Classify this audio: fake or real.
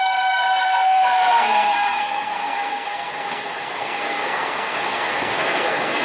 fake